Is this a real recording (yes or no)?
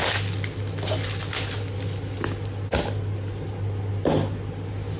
yes